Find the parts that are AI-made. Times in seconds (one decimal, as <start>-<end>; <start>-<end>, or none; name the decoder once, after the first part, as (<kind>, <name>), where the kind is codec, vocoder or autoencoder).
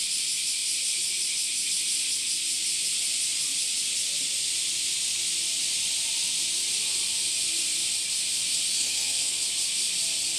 8.7-9.5 (codec, SNAC)